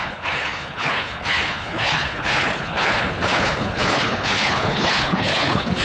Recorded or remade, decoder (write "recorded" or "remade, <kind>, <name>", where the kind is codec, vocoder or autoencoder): remade, codec, HILCodec